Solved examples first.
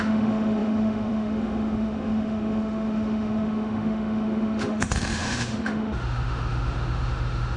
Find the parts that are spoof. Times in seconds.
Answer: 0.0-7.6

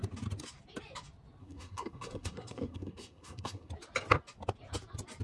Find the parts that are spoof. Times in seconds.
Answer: 1.4-3.7

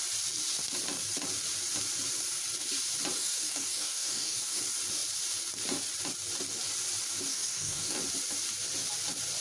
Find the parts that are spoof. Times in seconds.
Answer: 3.2-4.6; 7.3-8.0

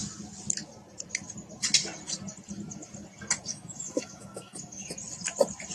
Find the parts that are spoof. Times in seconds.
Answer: 3.5-4.9

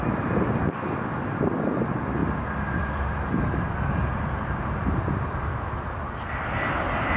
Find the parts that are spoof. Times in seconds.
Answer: 5.5-6.0

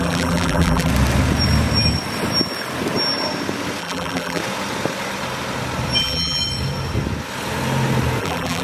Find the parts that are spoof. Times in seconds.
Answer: 0.0-0.9; 3.8-4.4; 6.0-6.4; 8.2-8.6